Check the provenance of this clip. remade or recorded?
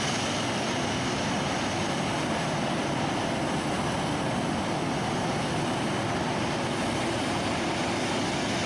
recorded